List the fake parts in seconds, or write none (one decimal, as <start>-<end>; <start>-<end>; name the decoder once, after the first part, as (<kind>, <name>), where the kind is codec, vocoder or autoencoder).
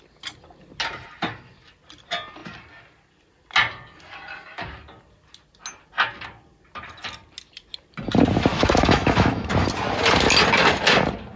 8.5-9.5 (autoencoder, DAC-VAE)